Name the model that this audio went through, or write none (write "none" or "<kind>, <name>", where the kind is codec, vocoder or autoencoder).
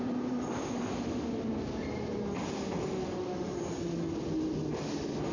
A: none